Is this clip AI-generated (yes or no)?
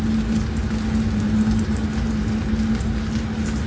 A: no